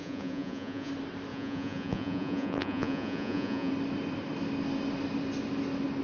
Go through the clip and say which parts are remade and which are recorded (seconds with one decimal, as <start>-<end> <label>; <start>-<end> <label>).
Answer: 0.0-0.9 remade; 0.9-1.3 recorded; 1.3-3.7 remade; 3.7-6.0 recorded